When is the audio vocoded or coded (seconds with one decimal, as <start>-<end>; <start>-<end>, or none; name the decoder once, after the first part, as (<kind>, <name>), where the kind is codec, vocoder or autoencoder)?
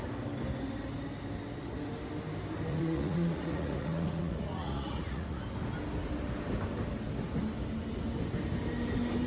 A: 2.7-5.4 (vocoder, Vocos)